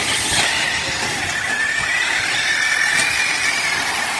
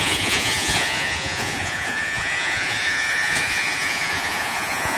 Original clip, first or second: first